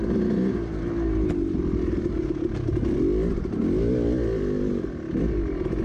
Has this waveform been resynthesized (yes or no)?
no